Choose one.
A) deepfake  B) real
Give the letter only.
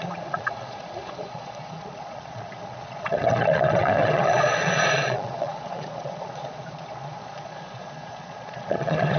A